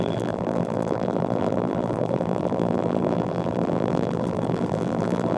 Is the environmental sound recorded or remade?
remade